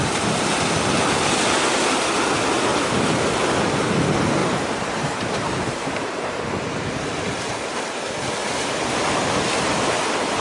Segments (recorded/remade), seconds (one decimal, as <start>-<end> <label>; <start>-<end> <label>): 0.0-2.7 recorded; 2.7-3.3 remade; 3.3-4.4 recorded; 4.4-6.4 remade; 6.4-8.4 recorded; 8.4-9.4 remade; 9.4-10.4 recorded